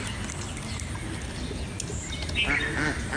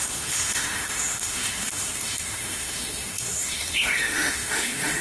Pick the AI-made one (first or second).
second